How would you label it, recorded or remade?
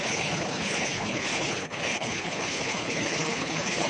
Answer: remade